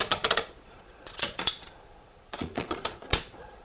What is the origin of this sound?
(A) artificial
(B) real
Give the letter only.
A